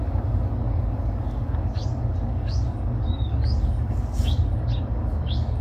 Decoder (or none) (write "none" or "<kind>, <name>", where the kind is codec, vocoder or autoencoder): codec, DAC